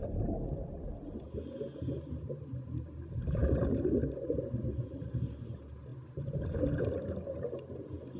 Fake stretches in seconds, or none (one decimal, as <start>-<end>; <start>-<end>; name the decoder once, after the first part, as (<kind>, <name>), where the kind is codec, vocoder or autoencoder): none